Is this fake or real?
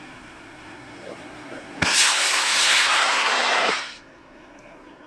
fake